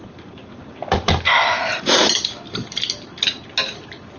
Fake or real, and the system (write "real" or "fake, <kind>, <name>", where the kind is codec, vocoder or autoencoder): real